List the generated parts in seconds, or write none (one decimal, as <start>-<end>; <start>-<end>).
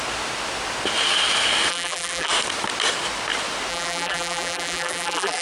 1.7-2.3; 3.7-5.4